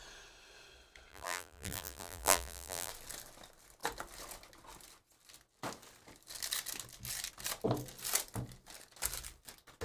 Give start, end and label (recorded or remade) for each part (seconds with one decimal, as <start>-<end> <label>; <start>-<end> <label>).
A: 0.0-1.1 recorded; 1.1-2.9 remade; 2.9-9.8 recorded